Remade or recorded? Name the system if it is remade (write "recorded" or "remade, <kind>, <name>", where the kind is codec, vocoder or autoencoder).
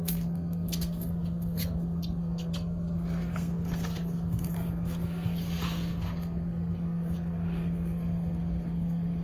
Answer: remade, codec, SNAC